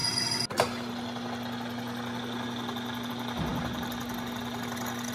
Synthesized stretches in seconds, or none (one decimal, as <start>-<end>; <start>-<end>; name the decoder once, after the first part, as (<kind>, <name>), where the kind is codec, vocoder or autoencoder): none